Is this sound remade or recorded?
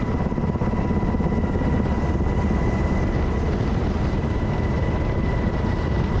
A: recorded